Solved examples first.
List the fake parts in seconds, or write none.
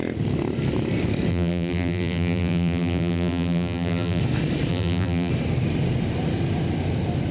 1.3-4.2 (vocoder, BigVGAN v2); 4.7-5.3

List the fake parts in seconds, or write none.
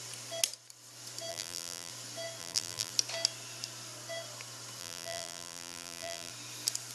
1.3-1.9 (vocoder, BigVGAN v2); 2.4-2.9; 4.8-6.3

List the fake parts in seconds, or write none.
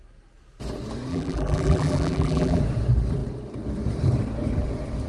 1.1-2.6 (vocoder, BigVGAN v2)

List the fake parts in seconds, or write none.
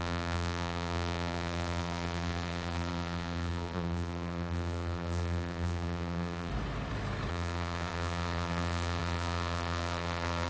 0.0-6.5 (vocoder, BigVGAN v2); 7.3-10.5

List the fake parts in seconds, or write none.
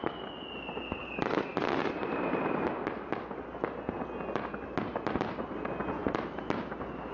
none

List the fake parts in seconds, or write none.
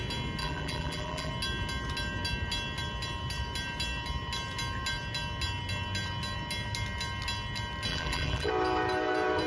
0.4-1.3 (vocoder, BigVGAN v2); 7.9-8.5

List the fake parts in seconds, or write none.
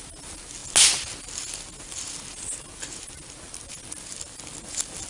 none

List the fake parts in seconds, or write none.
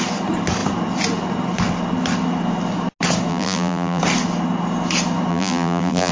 3.3-4.0 (vocoder, BigVGAN v2); 5.3-6.1